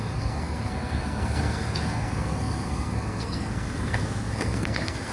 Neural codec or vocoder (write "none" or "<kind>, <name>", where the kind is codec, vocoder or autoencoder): codec, SNAC